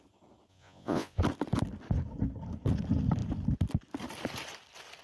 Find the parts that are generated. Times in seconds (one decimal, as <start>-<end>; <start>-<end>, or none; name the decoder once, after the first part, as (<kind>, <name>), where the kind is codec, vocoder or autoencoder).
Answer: 0.5-1.2 (vocoder, Vocos)